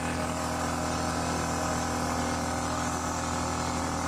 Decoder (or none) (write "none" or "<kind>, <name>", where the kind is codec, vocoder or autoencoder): none